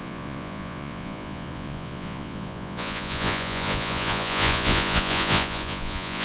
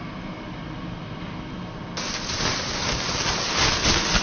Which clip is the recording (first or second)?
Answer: second